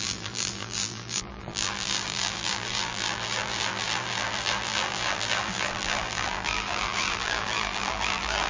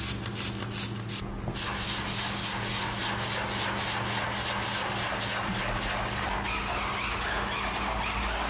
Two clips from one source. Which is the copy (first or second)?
first